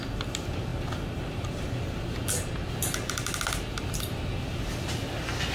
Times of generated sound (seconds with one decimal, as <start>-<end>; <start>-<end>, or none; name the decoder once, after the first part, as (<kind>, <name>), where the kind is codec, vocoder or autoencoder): none